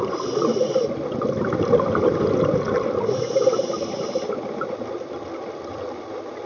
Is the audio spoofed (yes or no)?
no